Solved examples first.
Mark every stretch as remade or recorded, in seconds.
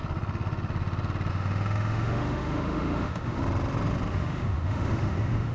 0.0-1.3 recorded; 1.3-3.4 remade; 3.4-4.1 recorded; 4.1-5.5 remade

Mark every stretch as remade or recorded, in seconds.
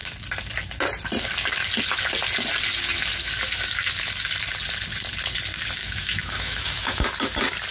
0.0-5.8 recorded; 5.8-7.0 remade; 7.0-7.7 recorded